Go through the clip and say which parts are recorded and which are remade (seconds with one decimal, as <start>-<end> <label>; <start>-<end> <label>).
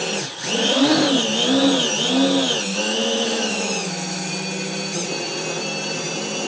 0.0-2.7 recorded; 2.7-4.3 remade; 4.3-6.5 recorded